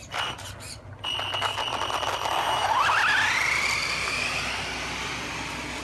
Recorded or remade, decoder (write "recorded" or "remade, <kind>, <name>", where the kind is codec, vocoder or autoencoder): recorded